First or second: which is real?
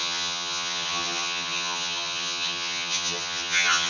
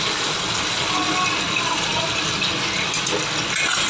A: second